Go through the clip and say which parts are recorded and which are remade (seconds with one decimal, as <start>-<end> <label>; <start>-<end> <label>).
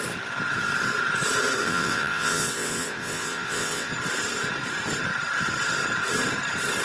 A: 0.0-1.6 recorded; 1.6-3.9 remade; 3.9-6.8 recorded